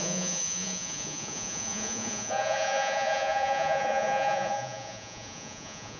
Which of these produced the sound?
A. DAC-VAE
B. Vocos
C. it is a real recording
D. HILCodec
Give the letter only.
B